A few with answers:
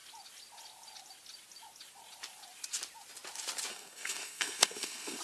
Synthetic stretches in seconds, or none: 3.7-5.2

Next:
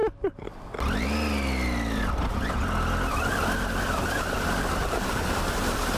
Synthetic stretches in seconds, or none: 2.0-2.6; 4.8-6.0

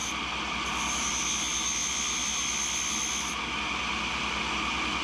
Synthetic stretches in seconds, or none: none

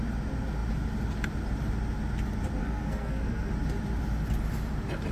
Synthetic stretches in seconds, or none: 2.6-3.5

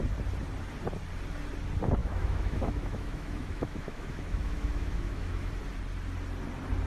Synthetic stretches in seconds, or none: 2.0-5.5

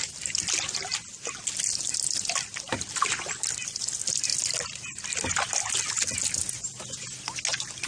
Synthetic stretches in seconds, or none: none